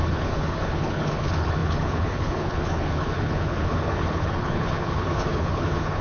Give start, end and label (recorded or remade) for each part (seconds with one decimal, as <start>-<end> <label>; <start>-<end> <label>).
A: 0.0-6.0 remade